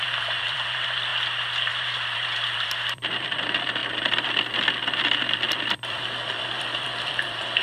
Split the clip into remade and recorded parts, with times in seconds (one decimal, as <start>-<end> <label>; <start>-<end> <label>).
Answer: 0.0-1.1 remade; 1.1-1.7 recorded; 1.7-7.6 remade